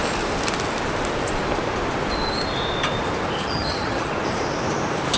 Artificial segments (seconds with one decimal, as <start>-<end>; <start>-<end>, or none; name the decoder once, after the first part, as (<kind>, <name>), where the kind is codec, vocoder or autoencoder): 3.4-4.1 (vocoder, HiFi-GAN)